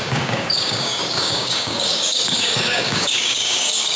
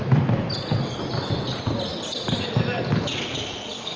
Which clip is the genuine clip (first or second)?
second